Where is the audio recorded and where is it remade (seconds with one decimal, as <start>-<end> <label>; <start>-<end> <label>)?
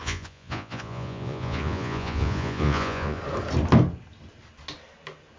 0.0-3.2 remade; 3.2-5.4 recorded